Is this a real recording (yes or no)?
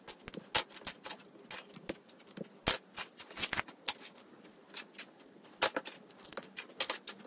yes